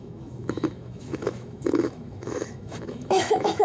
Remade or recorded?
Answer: remade